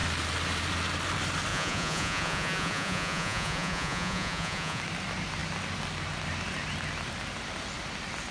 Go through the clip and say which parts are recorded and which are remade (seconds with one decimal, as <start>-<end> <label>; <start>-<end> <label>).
0.0-1.5 recorded; 1.5-4.8 remade; 4.8-8.3 recorded